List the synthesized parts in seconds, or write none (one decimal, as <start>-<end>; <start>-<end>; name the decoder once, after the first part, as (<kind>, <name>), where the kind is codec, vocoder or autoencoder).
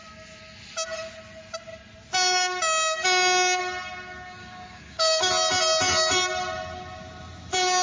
4.4-5.3 (codec, DAC)